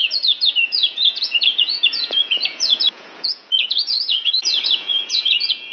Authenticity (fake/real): fake